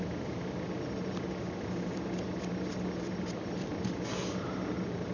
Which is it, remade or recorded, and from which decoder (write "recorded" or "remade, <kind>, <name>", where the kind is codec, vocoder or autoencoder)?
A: recorded